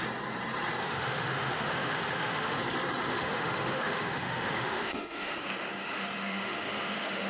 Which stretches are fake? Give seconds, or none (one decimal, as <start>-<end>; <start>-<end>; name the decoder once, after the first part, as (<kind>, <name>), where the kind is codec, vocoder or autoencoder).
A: 0.8-2.6 (autoencoder, DAC-VAE); 3.1-7.3